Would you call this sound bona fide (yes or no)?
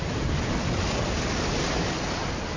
yes